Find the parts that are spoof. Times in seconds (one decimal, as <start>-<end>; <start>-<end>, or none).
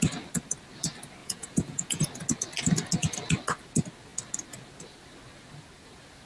1.2-2.1